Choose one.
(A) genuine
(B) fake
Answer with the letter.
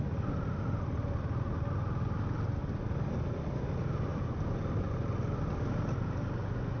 A